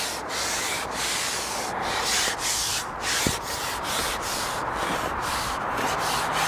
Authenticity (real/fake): real